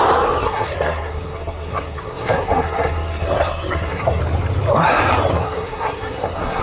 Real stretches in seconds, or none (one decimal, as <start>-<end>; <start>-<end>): 0.0-0.4; 4.2-5.3